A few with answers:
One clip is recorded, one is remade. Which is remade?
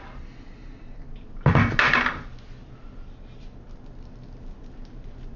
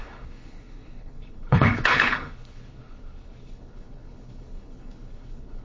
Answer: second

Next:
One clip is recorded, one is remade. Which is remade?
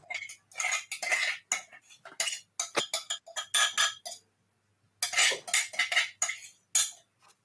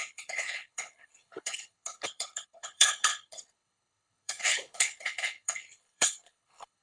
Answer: second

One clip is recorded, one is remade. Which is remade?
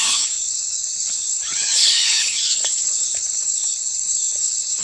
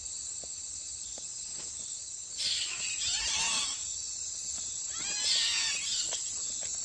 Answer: first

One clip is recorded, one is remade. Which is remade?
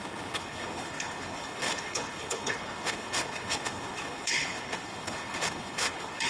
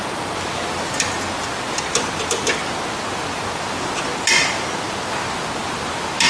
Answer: first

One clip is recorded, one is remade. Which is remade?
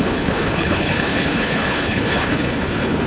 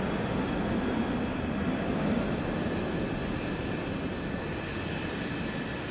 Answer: first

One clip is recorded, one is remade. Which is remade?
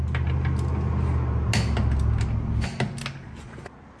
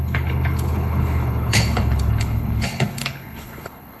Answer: second